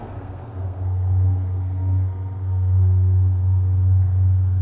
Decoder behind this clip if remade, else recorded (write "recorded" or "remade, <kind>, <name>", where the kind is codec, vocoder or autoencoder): remade, codec, SNAC